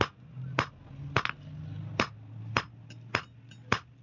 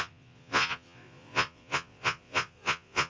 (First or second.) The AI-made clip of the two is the second